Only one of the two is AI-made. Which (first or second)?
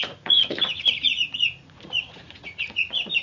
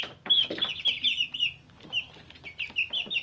first